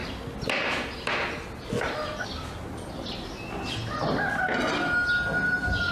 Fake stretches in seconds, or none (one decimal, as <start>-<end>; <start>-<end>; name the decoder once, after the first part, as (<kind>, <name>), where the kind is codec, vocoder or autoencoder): none